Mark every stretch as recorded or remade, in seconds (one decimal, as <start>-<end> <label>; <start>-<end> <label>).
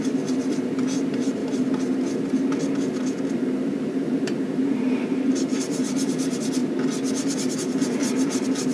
0.0-1.4 remade; 1.4-3.3 recorded; 3.3-6.6 remade; 6.6-7.5 recorded; 7.5-8.7 remade